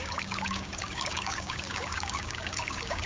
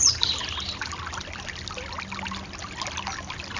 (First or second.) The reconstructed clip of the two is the first